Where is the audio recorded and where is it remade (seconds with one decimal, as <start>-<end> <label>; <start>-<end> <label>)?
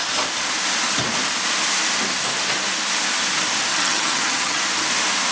0.0-3.7 recorded; 3.7-4.6 remade; 4.6-5.3 recorded